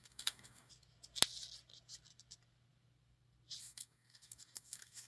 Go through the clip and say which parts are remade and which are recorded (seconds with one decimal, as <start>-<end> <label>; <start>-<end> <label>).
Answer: 0.0-0.7 remade; 0.7-3.6 recorded; 3.6-5.1 remade